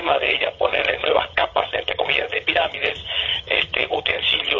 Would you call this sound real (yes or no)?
no